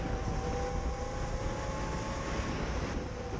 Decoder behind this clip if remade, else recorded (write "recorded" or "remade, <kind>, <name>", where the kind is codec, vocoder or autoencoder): recorded